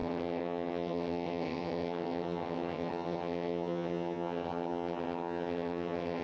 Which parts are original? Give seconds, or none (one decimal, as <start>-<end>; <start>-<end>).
none